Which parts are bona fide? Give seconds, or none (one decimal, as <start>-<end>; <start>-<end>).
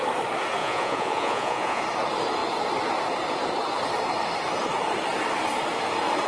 0.0-0.6; 1.8-6.3